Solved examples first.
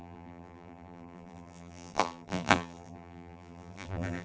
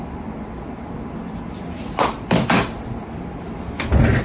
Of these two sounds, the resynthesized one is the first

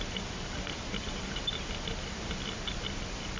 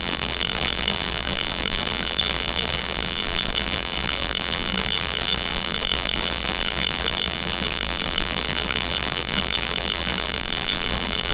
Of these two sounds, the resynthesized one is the second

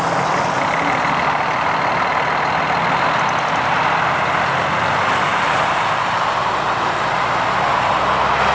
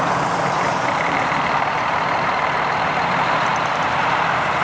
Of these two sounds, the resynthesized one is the second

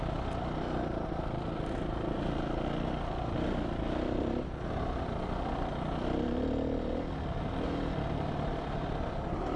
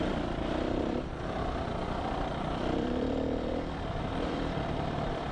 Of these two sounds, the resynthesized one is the second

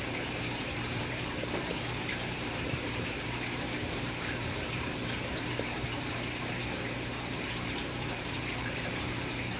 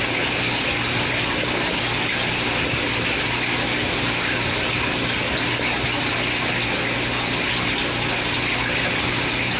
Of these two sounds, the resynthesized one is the first